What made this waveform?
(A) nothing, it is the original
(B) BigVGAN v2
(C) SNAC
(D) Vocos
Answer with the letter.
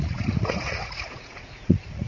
D